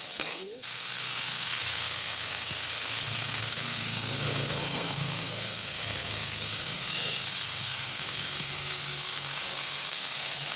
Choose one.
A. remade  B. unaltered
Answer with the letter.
A